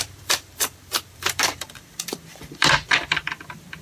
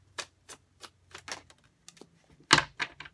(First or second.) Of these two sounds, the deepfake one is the first